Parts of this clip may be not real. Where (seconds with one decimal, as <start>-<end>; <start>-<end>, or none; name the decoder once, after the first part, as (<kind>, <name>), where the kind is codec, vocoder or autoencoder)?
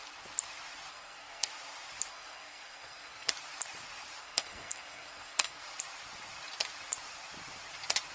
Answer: 0.9-1.5 (codec, SNAC); 2.1-3.3; 4.2-5.6